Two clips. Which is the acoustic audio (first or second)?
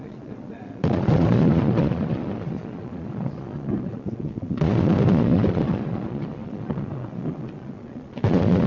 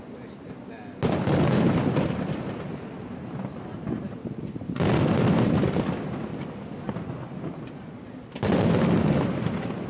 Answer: second